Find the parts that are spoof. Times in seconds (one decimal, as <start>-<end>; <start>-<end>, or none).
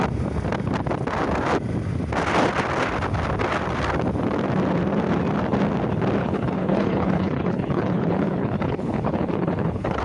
6.2-10.0